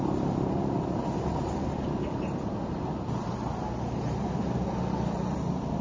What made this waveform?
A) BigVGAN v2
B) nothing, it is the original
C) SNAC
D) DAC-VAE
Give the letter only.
B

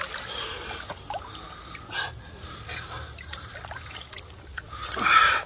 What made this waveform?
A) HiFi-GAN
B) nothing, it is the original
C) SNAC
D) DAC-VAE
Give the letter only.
B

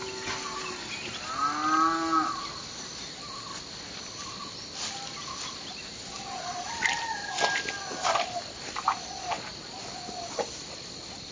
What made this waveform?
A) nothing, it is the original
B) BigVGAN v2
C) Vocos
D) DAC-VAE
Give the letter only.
A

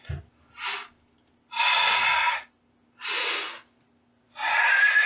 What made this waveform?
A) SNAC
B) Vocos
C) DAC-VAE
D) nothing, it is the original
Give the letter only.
D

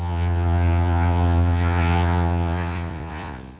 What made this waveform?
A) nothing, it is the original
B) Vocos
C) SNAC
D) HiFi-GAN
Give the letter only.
B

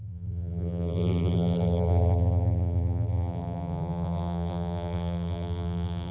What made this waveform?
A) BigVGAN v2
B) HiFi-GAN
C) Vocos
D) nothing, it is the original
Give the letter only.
A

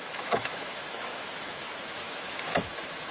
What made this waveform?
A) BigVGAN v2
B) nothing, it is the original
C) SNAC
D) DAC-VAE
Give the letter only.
D